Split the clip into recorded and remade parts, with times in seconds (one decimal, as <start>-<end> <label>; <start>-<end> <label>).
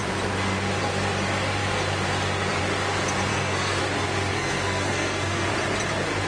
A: 0.0-3.3 recorded; 3.3-3.8 remade; 3.8-4.3 recorded; 4.3-5.5 remade; 5.5-6.3 recorded